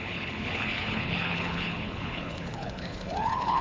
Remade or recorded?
remade